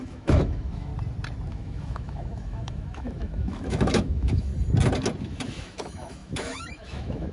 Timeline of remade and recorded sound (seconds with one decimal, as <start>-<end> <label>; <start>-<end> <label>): 0.0-0.9 remade; 0.9-1.5 recorded; 1.5-4.5 remade; 4.5-5.2 recorded; 5.2-7.3 remade